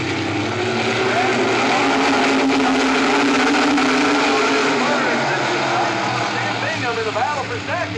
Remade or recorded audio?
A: recorded